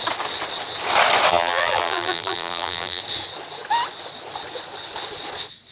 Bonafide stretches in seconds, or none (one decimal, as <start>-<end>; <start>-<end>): 0.0-1.3; 3.0-5.7